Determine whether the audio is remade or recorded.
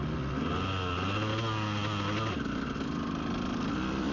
recorded